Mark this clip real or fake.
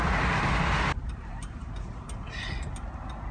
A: real